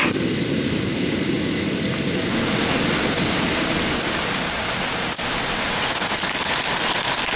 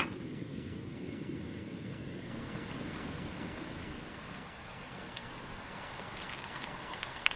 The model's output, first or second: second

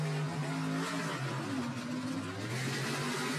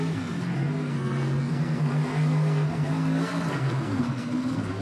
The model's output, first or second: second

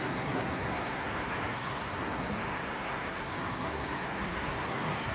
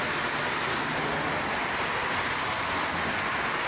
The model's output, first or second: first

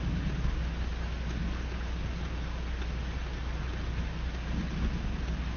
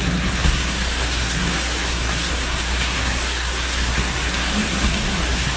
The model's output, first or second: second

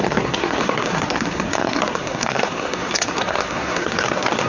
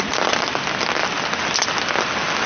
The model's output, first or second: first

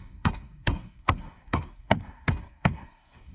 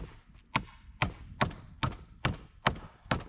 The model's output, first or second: first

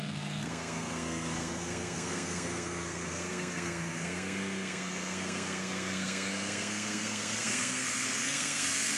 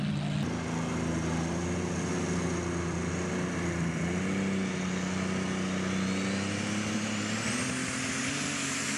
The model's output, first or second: first